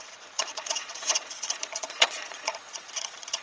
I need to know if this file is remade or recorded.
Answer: remade